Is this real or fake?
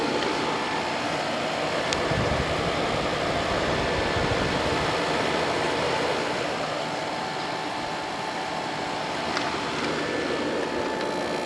real